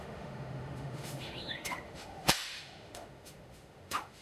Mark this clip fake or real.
fake